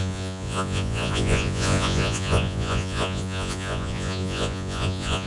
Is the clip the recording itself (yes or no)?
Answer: no